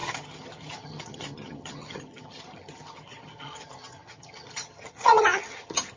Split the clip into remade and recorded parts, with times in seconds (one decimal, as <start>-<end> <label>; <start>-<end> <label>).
0.0-6.0 remade

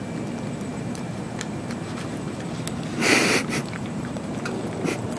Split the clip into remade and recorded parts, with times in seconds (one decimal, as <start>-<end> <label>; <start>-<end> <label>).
0.0-0.7 recorded; 0.7-2.4 remade; 2.4-3.6 recorded; 3.6-4.3 remade; 4.3-5.2 recorded

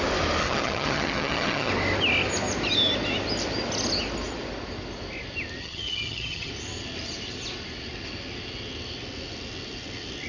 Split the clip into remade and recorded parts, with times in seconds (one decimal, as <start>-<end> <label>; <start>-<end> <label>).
0.0-0.4 recorded; 0.4-1.7 remade; 1.7-5.6 recorded; 5.6-6.5 remade; 6.5-10.3 recorded

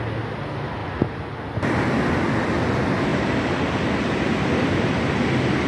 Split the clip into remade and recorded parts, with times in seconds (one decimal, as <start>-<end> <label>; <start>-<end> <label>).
0.0-0.8 recorded; 0.8-2.1 remade; 2.1-3.1 recorded; 3.1-5.0 remade; 5.0-5.7 recorded

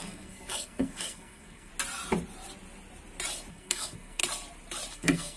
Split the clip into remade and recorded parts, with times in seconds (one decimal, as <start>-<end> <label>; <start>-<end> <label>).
0.0-1.7 remade; 1.7-3.5 recorded; 3.5-4.2 remade; 4.2-4.9 recorded; 4.9-5.4 remade

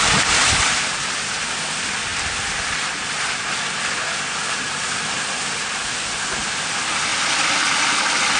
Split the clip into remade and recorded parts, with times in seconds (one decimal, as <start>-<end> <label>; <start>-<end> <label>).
0.0-8.4 recorded

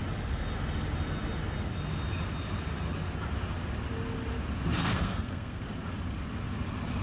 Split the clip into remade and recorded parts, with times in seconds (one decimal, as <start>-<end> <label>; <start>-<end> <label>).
0.0-4.8 recorded; 4.8-5.6 remade; 5.6-7.0 recorded

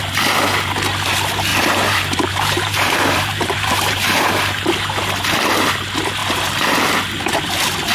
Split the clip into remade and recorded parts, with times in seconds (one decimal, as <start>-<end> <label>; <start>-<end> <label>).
0.0-1.5 recorded; 1.5-4.3 remade; 4.3-6.2 recorded; 6.2-6.7 remade; 6.7-7.9 recorded